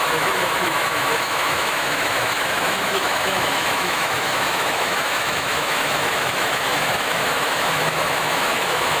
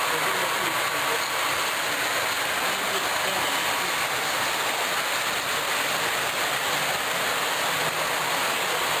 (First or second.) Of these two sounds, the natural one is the second